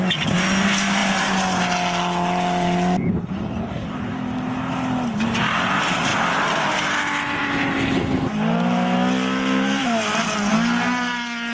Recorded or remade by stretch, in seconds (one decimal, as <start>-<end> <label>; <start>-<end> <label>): 0.0-6.1 recorded; 6.1-6.7 remade; 6.7-11.5 recorded